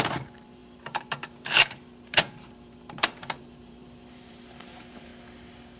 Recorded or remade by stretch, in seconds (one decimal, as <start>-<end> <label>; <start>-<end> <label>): 0.0-5.1 remade; 5.1-5.8 recorded